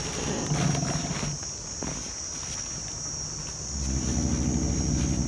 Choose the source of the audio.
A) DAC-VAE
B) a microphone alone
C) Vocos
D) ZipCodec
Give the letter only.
B